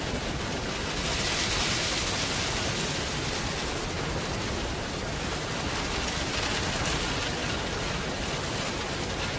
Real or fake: real